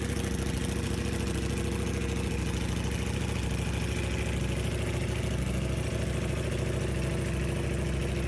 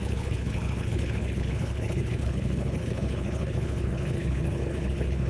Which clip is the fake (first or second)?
second